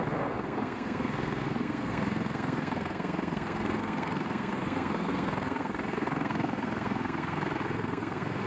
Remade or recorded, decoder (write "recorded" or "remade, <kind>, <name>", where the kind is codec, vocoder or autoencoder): remade, codec, SNAC